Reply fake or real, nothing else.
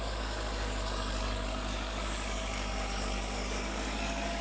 fake